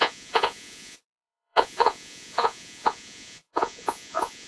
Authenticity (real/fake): fake